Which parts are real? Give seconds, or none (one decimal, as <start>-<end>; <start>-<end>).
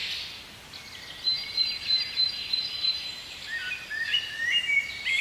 0.0-5.2